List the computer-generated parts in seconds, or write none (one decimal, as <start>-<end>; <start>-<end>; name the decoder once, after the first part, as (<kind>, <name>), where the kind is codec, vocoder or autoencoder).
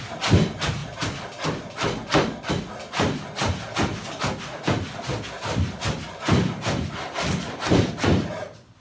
none